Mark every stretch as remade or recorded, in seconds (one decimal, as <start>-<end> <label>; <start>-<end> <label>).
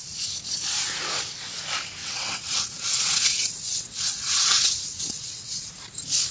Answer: 0.0-2.0 recorded; 2.0-5.7 remade; 5.7-6.3 recorded